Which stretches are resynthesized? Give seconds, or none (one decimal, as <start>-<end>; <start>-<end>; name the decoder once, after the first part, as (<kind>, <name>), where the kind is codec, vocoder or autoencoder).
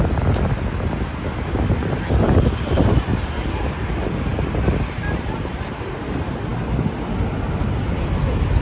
none